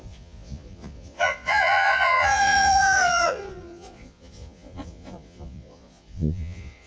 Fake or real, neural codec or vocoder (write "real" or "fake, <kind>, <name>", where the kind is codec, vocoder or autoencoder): fake, vocoder, Vocos